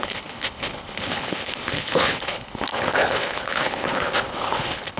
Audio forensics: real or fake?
fake